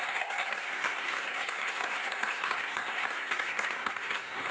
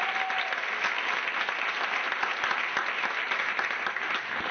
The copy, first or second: first